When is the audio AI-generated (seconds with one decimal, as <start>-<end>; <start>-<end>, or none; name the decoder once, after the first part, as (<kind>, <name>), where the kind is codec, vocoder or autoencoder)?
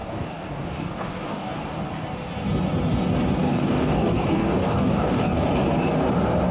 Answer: 0.0-1.8 (codec, DAC); 3.4-5.5